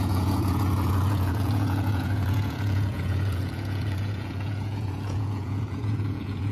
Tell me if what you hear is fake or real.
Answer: fake